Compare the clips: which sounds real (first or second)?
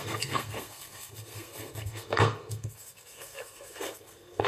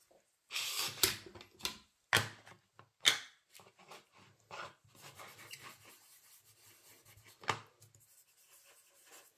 second